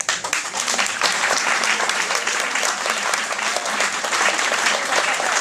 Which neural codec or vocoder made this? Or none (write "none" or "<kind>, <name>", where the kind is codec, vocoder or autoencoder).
vocoder, BigVGAN v2